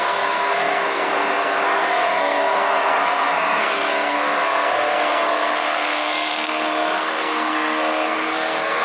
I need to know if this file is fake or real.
fake